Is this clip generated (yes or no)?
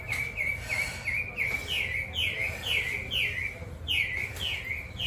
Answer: no